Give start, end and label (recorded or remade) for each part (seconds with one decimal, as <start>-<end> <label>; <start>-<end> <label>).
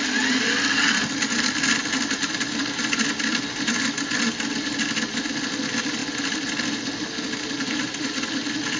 0.0-8.8 recorded